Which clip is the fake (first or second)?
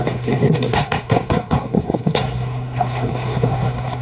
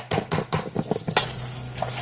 first